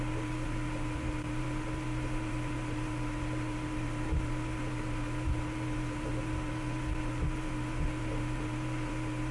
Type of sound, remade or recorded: remade